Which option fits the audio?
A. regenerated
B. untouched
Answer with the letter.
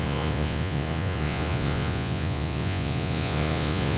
A